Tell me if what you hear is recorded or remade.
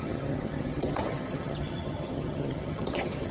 remade